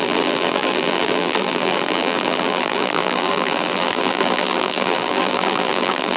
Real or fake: fake